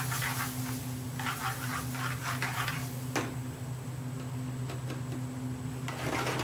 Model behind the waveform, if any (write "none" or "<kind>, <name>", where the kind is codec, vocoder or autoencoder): none